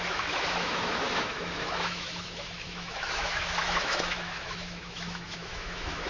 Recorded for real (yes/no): no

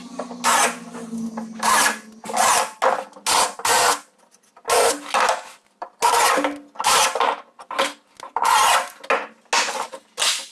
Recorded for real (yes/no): yes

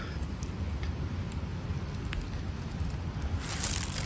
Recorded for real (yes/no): yes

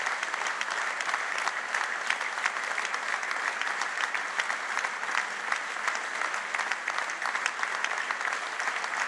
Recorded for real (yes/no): yes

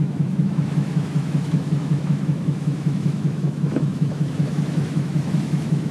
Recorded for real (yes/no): no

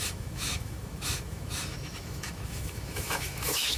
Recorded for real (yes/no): no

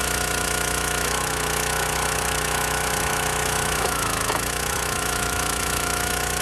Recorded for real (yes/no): no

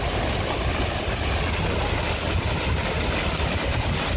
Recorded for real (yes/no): yes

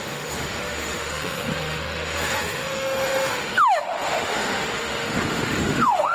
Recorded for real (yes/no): no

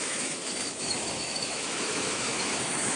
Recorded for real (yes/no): no